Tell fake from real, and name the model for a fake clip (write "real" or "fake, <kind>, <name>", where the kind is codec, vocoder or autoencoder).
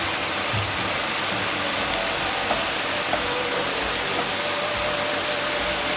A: real